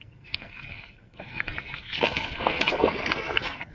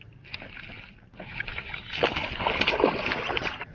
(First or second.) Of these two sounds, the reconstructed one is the first